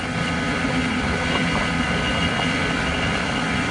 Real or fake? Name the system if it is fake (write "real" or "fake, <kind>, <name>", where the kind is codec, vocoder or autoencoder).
real